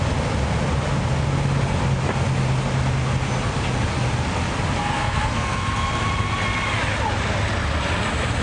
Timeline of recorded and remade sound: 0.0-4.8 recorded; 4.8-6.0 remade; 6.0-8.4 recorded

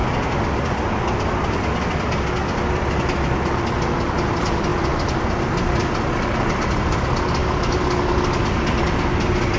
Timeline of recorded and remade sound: 0.0-9.6 recorded

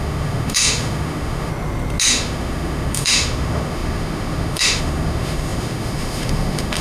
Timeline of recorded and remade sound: 0.0-1.5 remade; 1.5-2.1 recorded; 2.1-6.8 remade

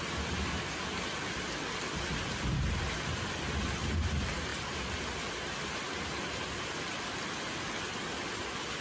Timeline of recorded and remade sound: 0.0-8.8 recorded